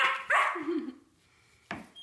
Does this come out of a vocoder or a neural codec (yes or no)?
no